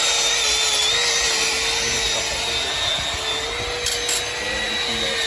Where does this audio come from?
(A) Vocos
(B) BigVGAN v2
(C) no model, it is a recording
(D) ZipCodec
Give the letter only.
C